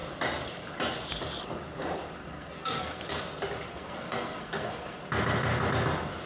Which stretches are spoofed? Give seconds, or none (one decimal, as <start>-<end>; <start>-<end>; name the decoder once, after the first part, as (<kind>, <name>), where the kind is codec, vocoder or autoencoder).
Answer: 2.2-3.2 (codec, SNAC); 3.7-5.0

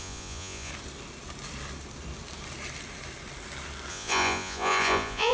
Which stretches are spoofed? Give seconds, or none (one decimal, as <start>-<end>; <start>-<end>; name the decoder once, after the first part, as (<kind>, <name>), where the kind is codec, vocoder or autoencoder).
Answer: 0.0-0.7 (vocoder, Vocos); 3.9-5.3

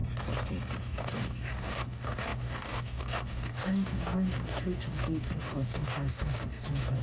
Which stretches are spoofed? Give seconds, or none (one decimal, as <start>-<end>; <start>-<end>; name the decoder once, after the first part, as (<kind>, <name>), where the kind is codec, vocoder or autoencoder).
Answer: 0.8-7.0 (codec, DAC)

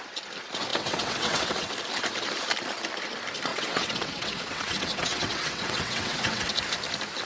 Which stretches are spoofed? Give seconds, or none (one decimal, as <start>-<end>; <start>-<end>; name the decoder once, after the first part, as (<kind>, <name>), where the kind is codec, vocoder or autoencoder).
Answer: 0.7-1.7 (vocoder, WaveNeXt); 3.5-6.5

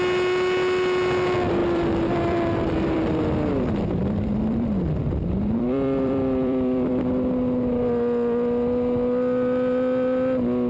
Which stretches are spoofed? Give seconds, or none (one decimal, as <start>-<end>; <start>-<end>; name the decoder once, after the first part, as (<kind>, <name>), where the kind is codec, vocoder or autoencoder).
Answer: 1.6-6.9 (vocoder, BigVGAN v2)